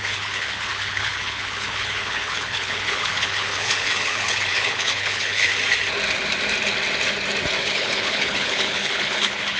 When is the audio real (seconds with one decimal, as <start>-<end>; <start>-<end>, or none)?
5.5-7.6